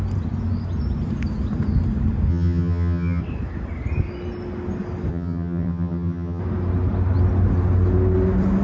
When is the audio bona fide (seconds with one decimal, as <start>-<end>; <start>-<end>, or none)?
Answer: 0.0-2.3; 3.2-5.1; 6.4-8.6